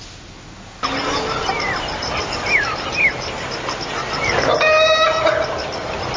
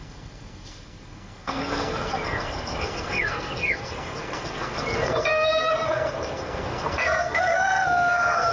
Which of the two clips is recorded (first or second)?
first